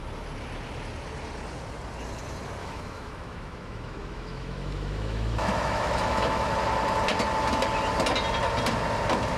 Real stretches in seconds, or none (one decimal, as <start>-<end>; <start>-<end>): 0.0-2.6; 6.5-9.4